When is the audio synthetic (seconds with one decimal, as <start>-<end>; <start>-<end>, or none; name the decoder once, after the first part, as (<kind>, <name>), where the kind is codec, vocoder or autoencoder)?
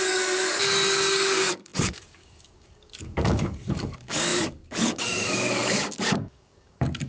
0.0-7.1 (codec, DAC)